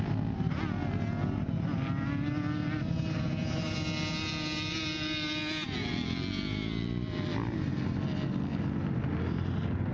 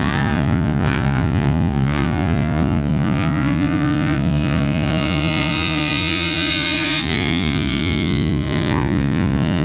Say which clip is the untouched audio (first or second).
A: first